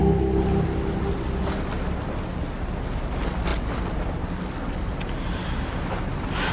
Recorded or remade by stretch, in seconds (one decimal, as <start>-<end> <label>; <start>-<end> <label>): 0.0-6.5 recorded